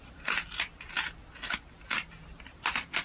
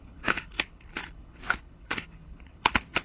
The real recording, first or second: first